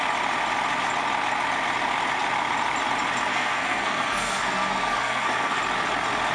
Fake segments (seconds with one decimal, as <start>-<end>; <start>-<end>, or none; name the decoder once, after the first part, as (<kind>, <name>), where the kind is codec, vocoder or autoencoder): 3.3-5.6 (codec, SNAC)